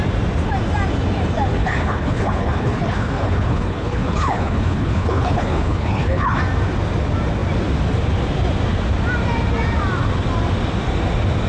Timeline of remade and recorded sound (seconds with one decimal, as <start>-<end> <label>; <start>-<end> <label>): 0.0-1.6 recorded; 1.6-6.4 remade; 6.4-11.5 recorded